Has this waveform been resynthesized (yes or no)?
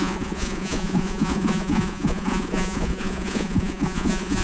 yes